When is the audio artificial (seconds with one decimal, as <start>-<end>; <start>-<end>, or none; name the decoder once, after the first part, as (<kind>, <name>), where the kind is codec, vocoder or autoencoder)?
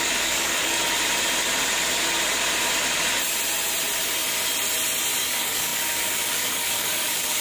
0.0-0.8 (codec, DAC); 5.2-7.4